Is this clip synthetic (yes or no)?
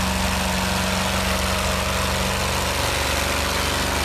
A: no